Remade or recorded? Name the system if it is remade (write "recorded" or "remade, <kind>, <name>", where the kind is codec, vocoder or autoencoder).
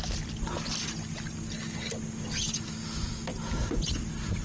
recorded